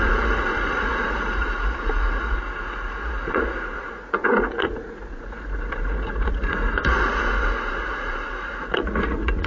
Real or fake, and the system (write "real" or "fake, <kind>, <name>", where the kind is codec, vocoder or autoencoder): fake, vocoder, Vocos